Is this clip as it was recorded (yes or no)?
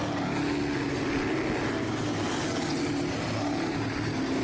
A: yes